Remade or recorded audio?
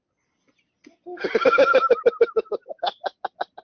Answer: recorded